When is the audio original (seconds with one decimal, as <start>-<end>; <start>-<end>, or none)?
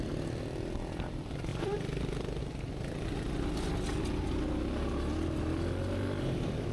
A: 0.0-1.5; 2.4-6.7